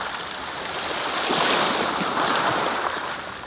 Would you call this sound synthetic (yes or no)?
no